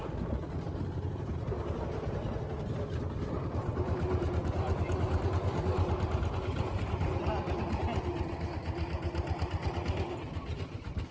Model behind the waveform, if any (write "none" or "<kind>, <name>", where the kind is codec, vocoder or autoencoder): none